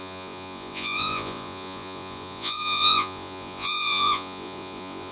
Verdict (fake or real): fake